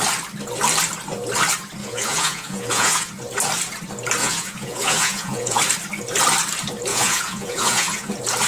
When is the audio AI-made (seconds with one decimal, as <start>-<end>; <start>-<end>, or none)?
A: 1.8-3.1; 4.2-5.6; 6.9-8.1